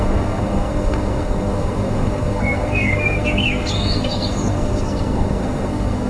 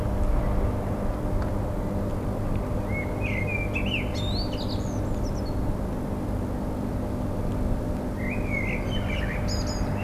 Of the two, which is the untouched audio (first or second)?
second